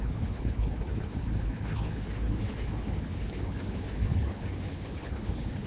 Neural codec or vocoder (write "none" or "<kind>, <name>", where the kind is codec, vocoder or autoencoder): codec, HILCodec